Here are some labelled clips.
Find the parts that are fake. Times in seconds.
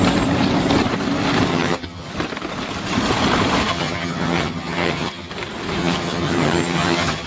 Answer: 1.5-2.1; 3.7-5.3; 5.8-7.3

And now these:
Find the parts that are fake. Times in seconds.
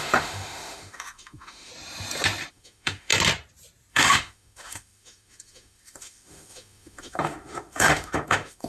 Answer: 0.0-1.7; 2.5-3.1; 3.9-8.7